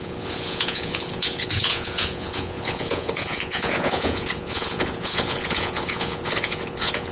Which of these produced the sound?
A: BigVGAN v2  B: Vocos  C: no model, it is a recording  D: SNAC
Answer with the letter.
B